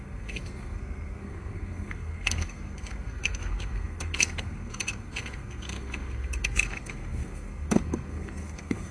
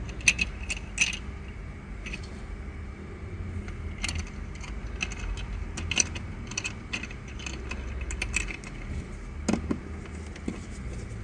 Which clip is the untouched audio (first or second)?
second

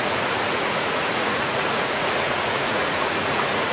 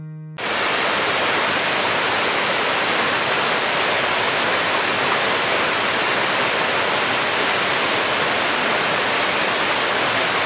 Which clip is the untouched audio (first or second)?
second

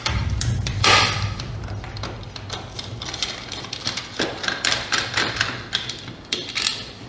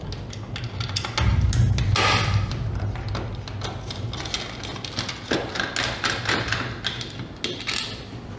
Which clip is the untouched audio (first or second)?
second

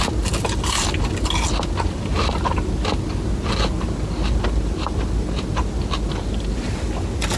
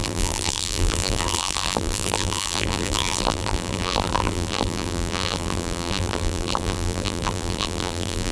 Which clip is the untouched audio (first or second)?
first